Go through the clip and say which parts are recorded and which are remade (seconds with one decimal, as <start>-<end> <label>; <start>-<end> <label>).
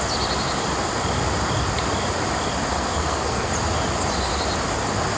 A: 0.0-2.7 recorded; 2.7-3.5 remade; 3.5-5.2 recorded